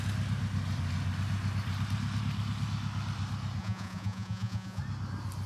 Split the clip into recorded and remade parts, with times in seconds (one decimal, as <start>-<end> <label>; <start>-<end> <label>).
0.0-3.6 recorded; 3.6-4.8 remade; 4.8-5.5 recorded